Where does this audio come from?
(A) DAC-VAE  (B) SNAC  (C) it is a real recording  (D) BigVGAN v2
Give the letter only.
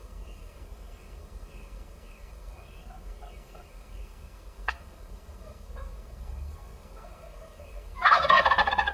B